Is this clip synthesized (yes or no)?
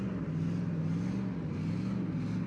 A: no